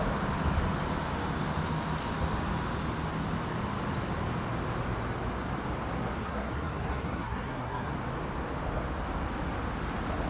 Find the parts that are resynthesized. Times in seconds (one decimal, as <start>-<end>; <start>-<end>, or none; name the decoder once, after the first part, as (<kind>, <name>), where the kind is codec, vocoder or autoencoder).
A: 6.2-7.9 (codec, SNAC)